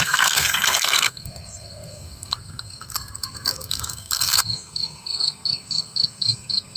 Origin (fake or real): fake